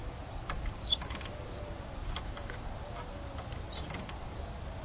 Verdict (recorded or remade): recorded